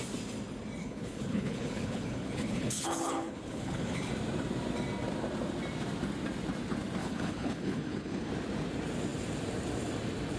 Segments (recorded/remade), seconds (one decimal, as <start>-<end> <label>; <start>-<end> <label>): 0.0-0.8 recorded; 0.8-4.1 remade; 4.1-7.0 recorded; 7.0-8.3 remade; 8.3-10.4 recorded